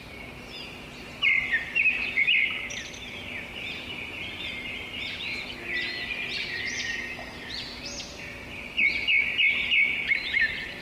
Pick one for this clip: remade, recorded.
recorded